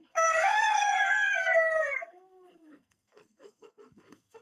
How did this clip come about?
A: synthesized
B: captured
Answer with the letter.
A